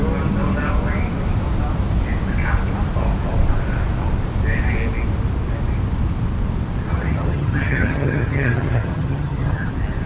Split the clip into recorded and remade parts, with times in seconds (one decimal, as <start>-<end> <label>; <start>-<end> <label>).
0.0-6.9 recorded; 6.9-9.7 remade; 9.7-10.1 recorded

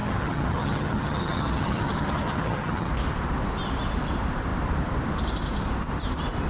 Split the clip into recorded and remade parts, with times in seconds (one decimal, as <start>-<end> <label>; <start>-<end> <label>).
0.0-2.9 remade; 2.9-6.5 recorded